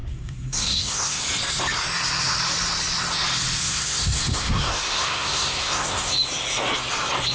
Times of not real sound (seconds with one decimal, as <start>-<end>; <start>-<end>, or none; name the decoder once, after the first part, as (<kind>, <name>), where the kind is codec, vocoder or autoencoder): 0.0-1.2 (codec, SNAC); 3.6-6.1